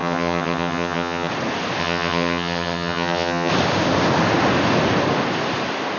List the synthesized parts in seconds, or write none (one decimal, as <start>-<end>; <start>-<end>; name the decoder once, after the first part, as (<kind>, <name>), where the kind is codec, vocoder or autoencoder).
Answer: 0.0-1.3 (vocoder, HiFi-GAN); 1.8-3.5